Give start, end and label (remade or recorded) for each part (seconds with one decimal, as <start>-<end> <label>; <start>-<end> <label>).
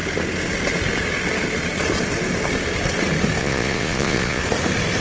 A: 0.0-3.4 recorded; 3.4-4.4 remade; 4.4-5.0 recorded